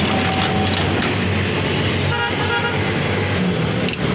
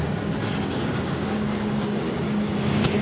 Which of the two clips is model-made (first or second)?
second